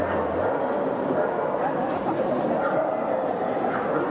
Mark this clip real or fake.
real